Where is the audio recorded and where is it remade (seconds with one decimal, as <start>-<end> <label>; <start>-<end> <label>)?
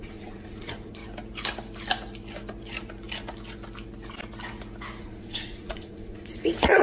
0.0-1.0 remade; 1.0-5.0 recorded; 5.0-6.8 remade